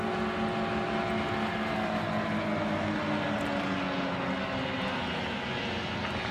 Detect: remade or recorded recorded